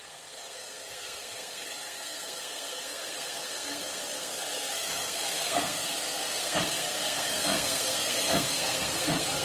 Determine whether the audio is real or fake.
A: fake